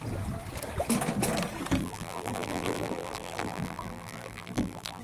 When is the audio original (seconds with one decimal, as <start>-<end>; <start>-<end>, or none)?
0.0-1.8